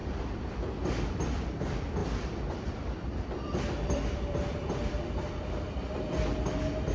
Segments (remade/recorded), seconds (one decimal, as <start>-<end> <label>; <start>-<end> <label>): 0.0-1.3 remade; 1.3-2.0 recorded; 2.0-6.1 remade; 6.1-6.9 recorded